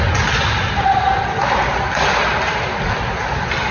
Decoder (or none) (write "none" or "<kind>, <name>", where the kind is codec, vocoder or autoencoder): none